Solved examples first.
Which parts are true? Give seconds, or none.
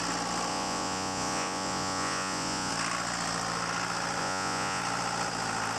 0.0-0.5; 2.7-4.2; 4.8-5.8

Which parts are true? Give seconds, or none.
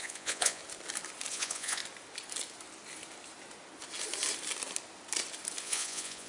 0.6-1.3; 1.8-5.6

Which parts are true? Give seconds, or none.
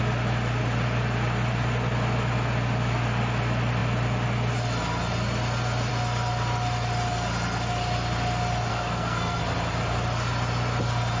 0.0-8.7; 9.4-11.2